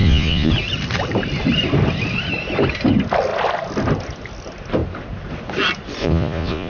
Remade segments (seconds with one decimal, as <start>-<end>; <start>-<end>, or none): 0.0-0.5; 6.0-6.7

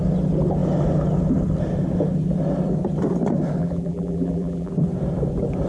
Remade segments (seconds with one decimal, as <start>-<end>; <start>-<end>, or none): 3.6-4.7

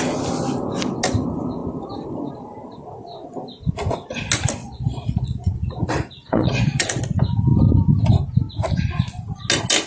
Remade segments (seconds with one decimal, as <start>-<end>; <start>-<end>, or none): 4.6-7.0

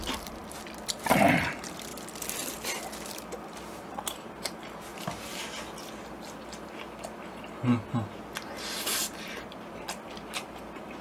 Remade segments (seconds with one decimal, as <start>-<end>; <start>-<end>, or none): 0.0-0.4; 0.9-1.9; 3.9-4.9; 8.6-11.0

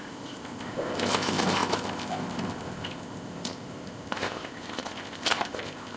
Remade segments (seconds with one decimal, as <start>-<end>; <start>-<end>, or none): 0.0-6.0

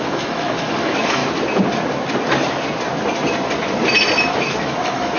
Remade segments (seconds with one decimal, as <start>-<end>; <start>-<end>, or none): 0.0-1.2; 4.3-5.2

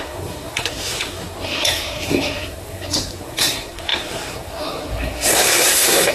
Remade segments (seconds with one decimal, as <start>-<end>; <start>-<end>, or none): 0.0-6.1